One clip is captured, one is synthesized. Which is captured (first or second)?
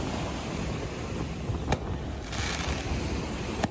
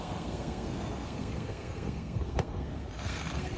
first